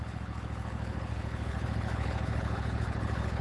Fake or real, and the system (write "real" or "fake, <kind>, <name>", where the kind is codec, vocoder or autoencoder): fake, codec, HILCodec